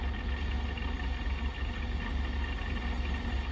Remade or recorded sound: recorded